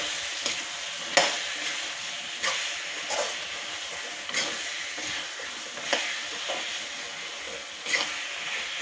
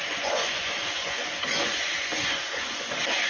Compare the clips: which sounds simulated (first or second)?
second